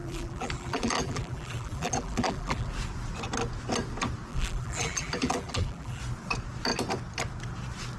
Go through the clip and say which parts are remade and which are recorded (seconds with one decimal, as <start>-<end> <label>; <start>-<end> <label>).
0.0-2.7 remade; 2.7-4.3 recorded; 4.3-6.0 remade; 6.0-8.0 recorded